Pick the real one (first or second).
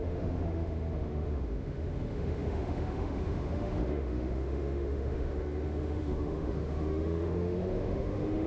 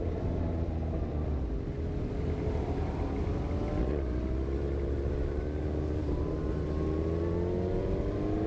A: second